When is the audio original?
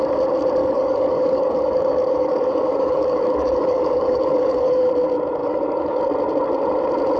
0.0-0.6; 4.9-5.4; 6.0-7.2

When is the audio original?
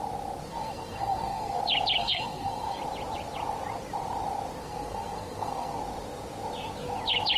0.0-0.5; 1.6-2.0; 2.8-4.6; 5.8-7.4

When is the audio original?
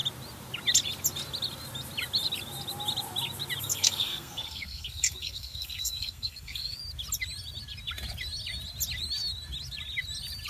0.0-3.6; 6.8-10.5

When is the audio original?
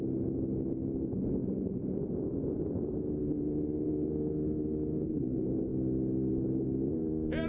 0.0-1.4; 2.0-3.2; 3.9-7.5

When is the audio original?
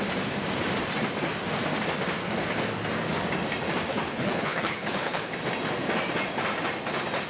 0.0-3.9; 5.3-7.3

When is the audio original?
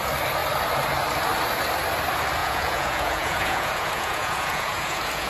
0.0-2.4